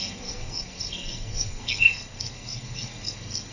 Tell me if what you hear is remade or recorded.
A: remade